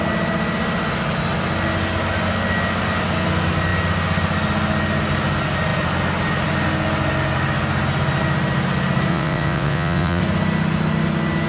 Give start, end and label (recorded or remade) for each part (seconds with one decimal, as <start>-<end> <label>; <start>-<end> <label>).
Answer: 0.0-9.1 recorded; 9.1-10.2 remade; 10.2-11.5 recorded